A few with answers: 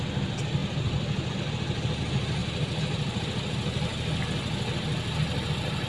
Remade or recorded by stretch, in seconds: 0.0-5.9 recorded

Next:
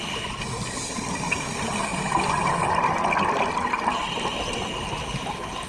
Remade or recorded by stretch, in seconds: 0.0-5.7 recorded